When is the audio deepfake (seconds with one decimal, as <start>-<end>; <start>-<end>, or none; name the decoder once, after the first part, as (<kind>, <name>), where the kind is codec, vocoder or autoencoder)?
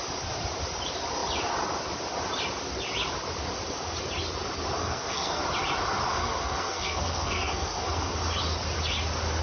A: 4.8-5.4 (codec, SNAC); 6.1-8.2